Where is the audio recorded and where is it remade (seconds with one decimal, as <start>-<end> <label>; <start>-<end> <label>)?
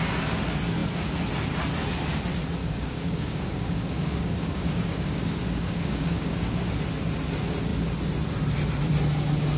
0.0-2.6 recorded; 2.6-6.7 remade; 6.7-9.6 recorded